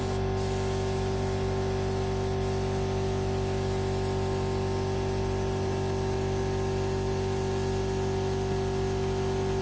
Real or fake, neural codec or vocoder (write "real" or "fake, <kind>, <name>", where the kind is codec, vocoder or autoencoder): real